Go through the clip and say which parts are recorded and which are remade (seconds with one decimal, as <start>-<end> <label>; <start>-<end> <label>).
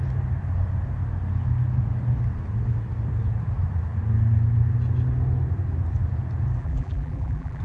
0.0-6.6 recorded; 6.6-7.6 remade